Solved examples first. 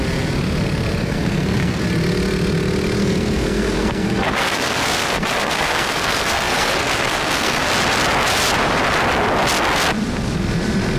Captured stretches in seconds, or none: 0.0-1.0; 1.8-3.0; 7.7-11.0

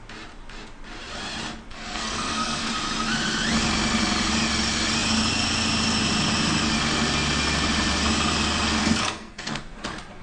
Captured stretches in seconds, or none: 0.0-1.7; 2.7-8.8; 9.6-10.2